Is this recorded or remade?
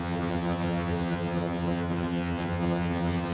remade